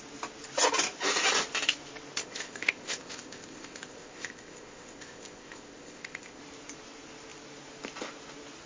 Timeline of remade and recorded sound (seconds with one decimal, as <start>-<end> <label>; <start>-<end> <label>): 0.0-2.2 recorded; 2.2-6.4 remade; 6.4-8.7 recorded